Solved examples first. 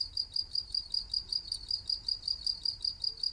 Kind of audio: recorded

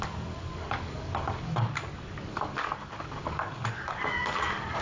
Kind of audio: remade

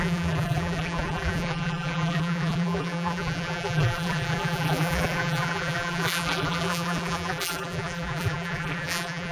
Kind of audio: remade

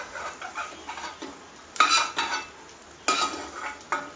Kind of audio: recorded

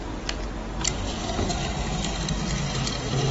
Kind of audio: recorded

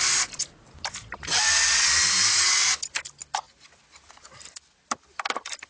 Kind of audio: recorded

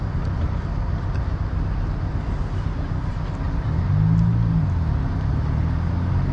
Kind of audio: recorded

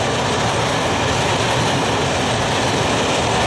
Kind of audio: recorded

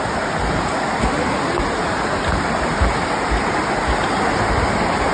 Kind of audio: recorded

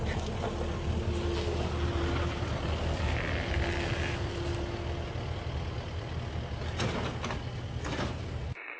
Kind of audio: recorded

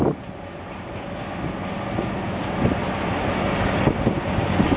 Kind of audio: recorded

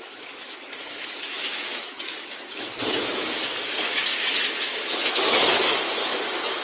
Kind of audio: remade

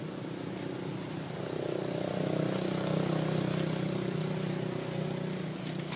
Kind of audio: recorded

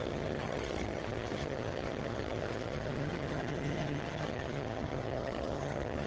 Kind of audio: remade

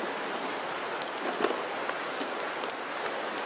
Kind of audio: recorded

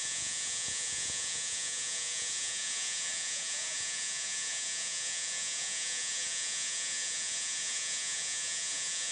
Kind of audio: remade